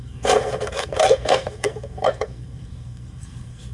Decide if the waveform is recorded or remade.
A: remade